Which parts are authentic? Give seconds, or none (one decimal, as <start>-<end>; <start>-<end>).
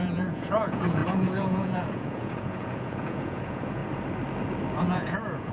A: 3.8-4.8